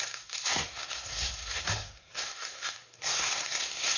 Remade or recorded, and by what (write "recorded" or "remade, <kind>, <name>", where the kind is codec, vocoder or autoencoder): remade, codec, SNAC